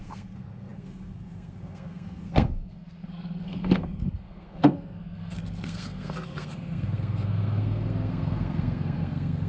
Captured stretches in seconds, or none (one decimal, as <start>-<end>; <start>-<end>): none